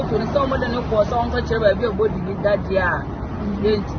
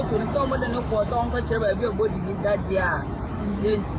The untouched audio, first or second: first